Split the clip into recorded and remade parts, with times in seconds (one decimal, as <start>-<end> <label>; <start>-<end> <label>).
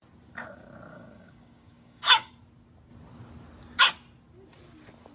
0.0-0.9 recorded; 0.9-2.3 remade; 2.3-5.1 recorded